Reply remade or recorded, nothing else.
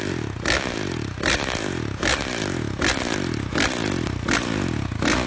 recorded